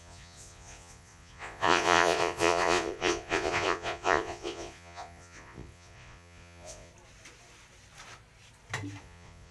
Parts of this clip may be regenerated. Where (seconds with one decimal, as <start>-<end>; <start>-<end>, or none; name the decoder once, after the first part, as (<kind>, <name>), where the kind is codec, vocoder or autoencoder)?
0.0-6.9 (vocoder, Vocos); 9.0-9.5

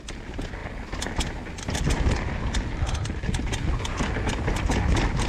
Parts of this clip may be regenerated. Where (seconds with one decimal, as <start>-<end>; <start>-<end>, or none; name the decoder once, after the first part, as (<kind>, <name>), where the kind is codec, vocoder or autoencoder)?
none

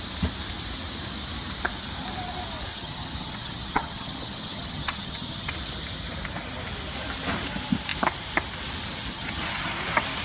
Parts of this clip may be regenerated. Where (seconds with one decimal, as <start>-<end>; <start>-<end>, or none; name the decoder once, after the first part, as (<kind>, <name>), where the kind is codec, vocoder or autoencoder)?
2.7-5.5 (vocoder, HiFi-GAN); 9.1-9.7

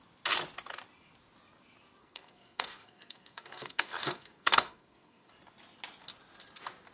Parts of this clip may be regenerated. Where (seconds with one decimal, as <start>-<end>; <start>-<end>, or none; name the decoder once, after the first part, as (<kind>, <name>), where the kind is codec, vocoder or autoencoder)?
2.0-5.3 (codec, SNAC)

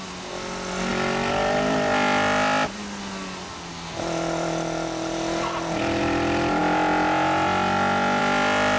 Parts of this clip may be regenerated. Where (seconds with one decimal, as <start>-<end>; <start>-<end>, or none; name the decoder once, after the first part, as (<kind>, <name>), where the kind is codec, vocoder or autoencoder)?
none

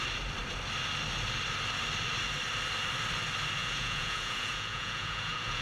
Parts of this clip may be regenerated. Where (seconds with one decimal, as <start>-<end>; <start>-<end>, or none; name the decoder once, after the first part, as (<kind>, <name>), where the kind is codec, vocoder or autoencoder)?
3.6-5.6 (vocoder, Vocos)

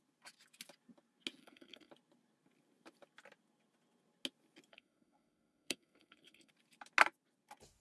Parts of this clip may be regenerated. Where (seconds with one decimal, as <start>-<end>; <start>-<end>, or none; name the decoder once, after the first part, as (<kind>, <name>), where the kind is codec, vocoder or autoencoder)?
1.4-1.9 (codec, SNAC); 4.7-6.5